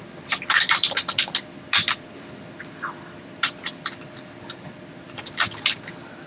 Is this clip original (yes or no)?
yes